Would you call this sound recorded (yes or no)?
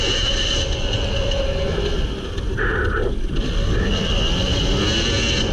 yes